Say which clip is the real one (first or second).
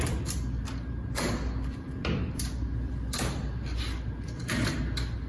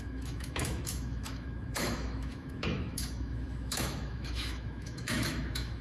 first